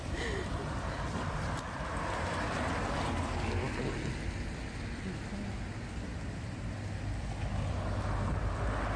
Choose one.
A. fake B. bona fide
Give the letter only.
B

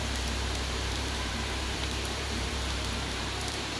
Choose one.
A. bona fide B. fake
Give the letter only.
B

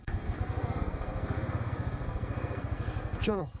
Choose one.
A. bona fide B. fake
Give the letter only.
B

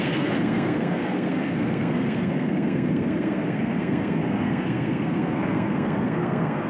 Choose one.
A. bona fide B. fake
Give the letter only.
B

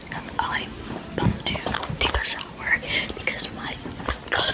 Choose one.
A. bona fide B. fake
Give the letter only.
A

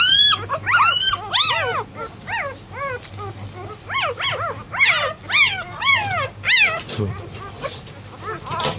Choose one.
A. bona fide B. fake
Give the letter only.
A